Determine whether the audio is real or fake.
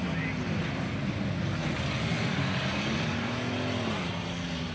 real